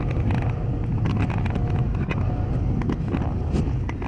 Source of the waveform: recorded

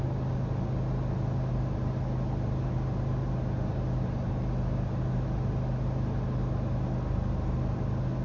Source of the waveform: recorded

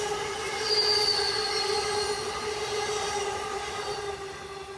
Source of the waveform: recorded